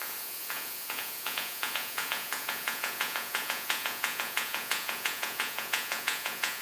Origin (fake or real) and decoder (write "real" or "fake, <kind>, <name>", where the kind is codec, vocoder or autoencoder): fake, vocoder, Vocos